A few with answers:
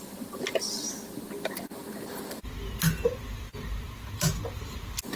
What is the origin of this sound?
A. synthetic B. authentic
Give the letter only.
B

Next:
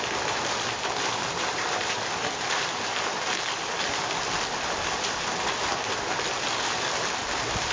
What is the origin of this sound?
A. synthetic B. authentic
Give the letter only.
A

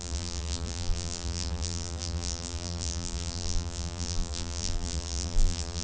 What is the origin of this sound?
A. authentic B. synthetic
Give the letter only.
B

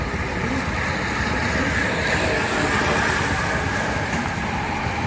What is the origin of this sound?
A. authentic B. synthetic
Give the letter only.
A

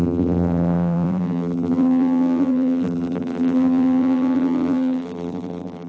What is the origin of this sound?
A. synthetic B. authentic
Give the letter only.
A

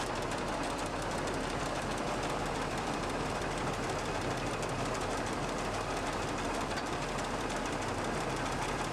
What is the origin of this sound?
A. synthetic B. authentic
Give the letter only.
A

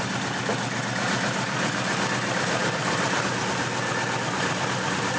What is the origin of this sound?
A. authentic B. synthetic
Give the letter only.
A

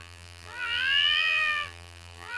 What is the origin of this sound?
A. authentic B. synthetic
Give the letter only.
B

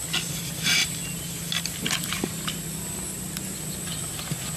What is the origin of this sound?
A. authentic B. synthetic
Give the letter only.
A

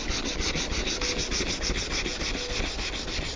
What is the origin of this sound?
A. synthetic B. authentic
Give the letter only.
B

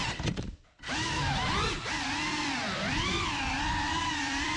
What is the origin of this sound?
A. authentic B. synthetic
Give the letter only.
B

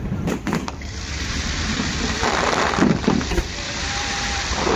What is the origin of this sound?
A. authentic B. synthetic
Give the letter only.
B